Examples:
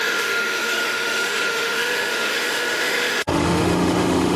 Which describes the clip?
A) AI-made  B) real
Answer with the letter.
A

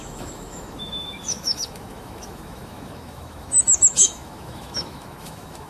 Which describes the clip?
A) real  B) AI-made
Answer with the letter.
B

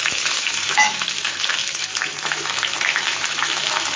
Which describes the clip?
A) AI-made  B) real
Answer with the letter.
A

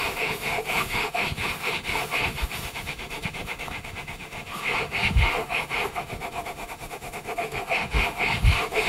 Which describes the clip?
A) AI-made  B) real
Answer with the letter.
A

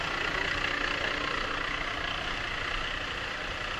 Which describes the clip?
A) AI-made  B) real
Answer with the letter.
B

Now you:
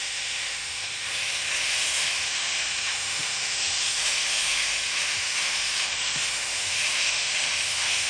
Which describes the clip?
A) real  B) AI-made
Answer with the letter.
B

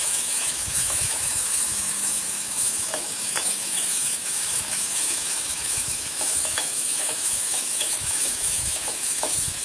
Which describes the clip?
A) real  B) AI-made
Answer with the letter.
B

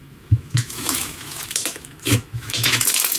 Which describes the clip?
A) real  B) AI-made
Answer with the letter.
B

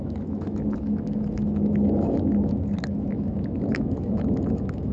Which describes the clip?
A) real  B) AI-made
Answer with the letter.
B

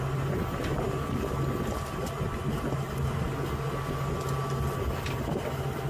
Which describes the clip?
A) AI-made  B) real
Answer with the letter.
B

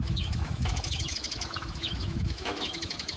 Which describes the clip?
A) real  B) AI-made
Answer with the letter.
B